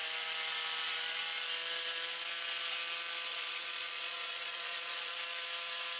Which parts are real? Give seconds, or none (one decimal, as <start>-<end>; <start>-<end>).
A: 0.0-3.3; 5.1-6.0